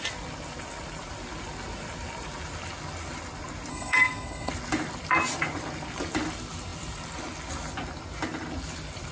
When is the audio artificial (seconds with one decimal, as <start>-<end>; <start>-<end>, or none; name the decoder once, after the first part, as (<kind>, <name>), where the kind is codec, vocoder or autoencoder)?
3.7-4.5 (codec, SNAC)